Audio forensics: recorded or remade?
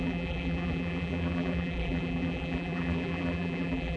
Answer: remade